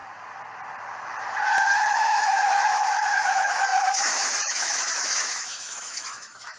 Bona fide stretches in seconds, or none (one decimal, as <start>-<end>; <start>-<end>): 0.0-1.9